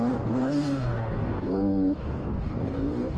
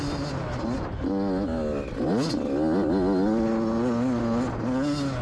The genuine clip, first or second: second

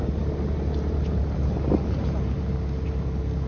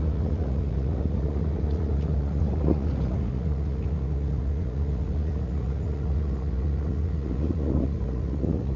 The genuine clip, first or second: first